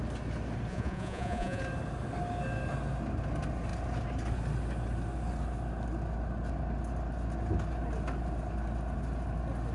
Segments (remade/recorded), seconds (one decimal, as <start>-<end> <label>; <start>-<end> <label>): 0.0-0.7 recorded; 0.7-1.6 remade; 1.6-9.7 recorded